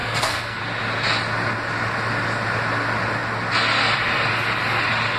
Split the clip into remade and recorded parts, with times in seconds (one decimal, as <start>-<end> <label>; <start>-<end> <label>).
0.0-0.6 remade; 0.6-5.2 recorded